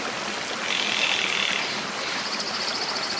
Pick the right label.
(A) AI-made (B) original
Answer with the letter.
B